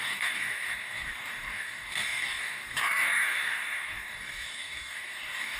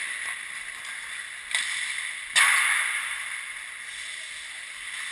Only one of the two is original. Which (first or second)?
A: second